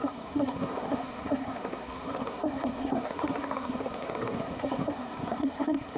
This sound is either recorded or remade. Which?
remade